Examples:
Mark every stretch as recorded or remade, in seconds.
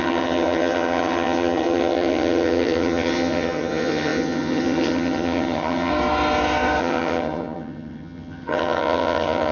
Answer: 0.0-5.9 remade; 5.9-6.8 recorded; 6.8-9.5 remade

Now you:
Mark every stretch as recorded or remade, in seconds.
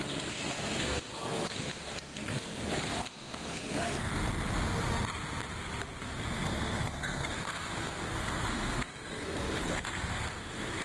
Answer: 0.0-4.1 remade; 4.1-6.0 recorded; 6.0-10.8 remade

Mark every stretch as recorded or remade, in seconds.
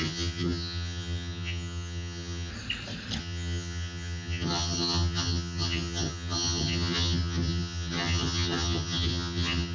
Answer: 0.0-2.5 remade; 2.5-3.2 recorded; 3.2-9.7 remade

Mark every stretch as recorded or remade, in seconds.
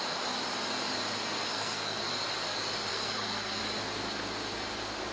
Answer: 0.0-1.5 recorded; 1.5-2.1 remade; 2.1-2.9 recorded; 2.9-3.6 remade; 3.6-5.1 recorded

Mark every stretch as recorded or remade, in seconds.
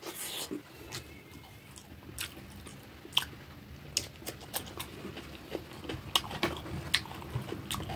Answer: 0.0-8.0 recorded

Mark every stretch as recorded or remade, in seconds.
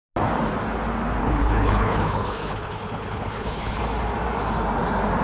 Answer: 0.0-1.2 recorded; 1.2-3.8 remade; 3.8-5.2 recorded